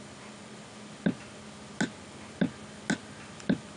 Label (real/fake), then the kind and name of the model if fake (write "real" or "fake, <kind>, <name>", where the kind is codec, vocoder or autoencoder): real